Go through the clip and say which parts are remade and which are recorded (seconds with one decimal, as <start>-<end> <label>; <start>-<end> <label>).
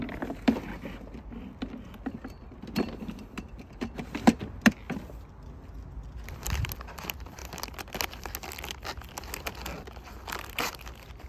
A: 0.0-11.3 recorded